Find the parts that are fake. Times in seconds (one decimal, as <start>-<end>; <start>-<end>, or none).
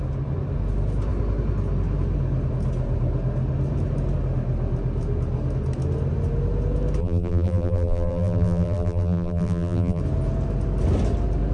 7.0-10.0